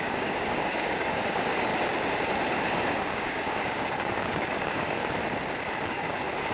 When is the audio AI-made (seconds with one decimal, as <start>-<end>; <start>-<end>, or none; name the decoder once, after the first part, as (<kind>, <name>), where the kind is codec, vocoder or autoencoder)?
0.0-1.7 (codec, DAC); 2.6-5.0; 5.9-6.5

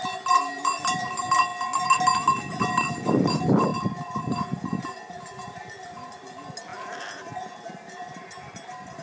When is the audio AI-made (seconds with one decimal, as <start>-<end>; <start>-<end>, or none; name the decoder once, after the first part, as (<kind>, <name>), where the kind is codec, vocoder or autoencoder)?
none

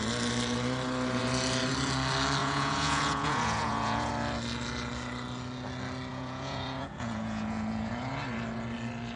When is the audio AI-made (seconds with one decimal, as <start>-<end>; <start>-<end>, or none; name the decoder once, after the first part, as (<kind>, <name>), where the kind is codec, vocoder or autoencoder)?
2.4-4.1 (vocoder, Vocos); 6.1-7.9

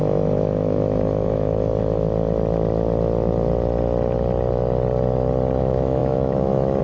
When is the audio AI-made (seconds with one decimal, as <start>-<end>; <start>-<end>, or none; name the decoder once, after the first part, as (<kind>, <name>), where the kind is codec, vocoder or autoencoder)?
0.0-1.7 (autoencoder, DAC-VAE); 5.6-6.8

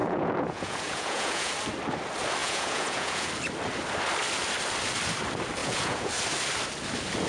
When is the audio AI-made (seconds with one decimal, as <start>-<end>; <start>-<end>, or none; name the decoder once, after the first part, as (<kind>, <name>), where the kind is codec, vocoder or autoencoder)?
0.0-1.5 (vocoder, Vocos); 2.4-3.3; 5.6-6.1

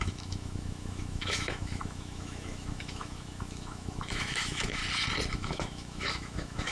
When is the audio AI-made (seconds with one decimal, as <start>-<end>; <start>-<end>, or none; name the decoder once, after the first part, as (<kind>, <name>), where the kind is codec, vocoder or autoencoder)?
0.0-4.8 (autoencoder, DAC-VAE); 5.3-6.7